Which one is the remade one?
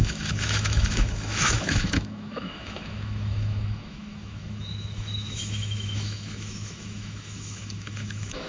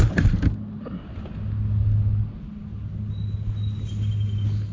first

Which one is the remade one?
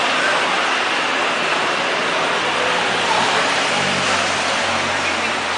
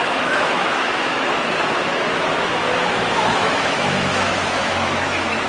second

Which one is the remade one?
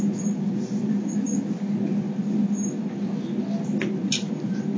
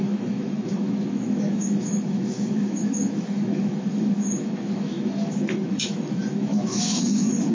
second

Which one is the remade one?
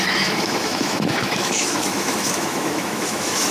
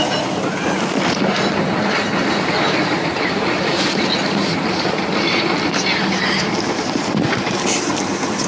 first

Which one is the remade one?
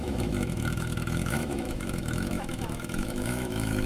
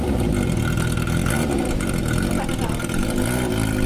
first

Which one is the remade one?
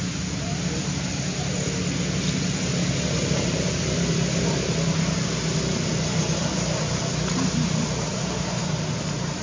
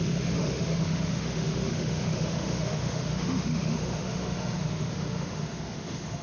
second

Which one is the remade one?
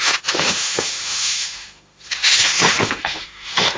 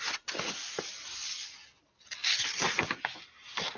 first